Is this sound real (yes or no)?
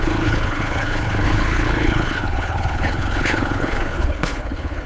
no